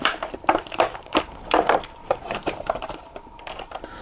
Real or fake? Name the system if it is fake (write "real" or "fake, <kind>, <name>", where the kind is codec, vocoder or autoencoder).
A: fake, vocoder, BigVGAN v2